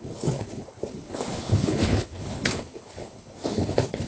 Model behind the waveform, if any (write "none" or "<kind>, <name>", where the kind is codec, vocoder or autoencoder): codec, HILCodec